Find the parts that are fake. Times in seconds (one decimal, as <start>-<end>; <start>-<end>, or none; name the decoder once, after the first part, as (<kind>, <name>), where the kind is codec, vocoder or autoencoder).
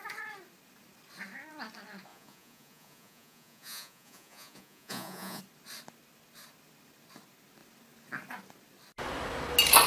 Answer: 2.1-5.4 (vocoder, Vocos)